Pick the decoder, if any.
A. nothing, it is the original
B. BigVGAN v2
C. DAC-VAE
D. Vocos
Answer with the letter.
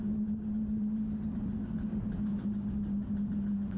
A